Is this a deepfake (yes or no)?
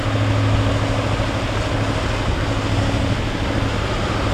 no